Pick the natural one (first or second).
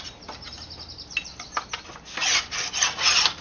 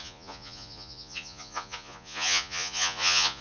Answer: first